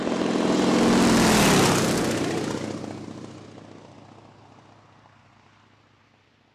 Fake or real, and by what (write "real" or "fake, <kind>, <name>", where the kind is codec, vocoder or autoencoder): real